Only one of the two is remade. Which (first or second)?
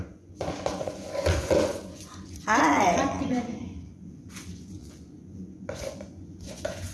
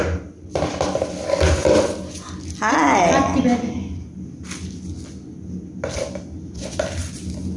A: first